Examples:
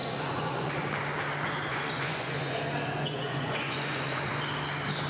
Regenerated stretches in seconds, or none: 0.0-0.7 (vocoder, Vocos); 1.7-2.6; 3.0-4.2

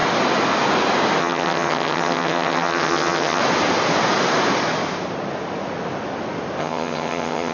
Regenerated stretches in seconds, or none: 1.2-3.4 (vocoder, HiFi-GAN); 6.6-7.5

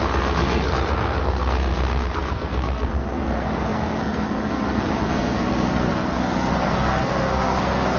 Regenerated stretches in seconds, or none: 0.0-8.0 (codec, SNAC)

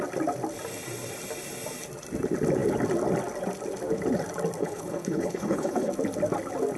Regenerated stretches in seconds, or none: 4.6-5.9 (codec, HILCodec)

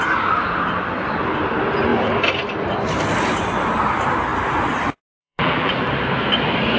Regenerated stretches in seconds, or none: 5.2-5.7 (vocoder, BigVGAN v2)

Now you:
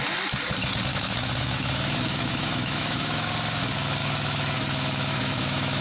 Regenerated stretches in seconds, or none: 0.9-3.3 (autoencoder, DAC-VAE); 4.0-5.8